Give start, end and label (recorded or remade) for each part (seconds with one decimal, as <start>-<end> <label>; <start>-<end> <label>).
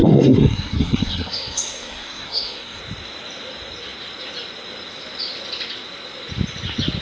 0.0-2.8 remade; 2.8-7.0 recorded